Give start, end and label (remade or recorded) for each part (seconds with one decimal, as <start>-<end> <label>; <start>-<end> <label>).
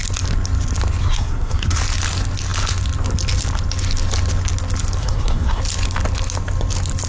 0.0-1.0 recorded; 1.0-1.8 remade; 1.8-5.0 recorded; 5.0-5.6 remade; 5.6-7.1 recorded